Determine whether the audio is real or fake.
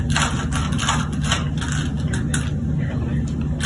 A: real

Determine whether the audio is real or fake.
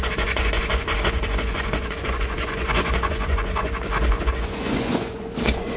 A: fake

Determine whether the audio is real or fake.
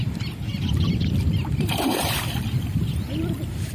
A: fake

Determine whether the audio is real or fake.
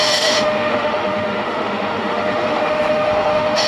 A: fake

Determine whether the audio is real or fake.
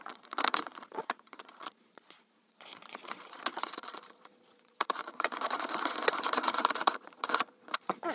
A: fake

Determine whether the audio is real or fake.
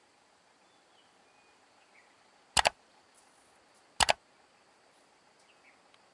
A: real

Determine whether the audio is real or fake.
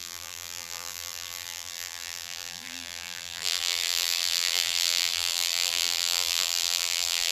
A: fake